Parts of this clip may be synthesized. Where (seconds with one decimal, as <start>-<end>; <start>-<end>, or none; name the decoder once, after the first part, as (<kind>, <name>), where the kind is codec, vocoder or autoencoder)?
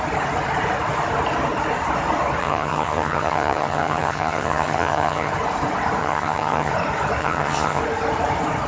2.4-5.3 (vocoder, HiFi-GAN); 6.0-6.7; 7.2-7.8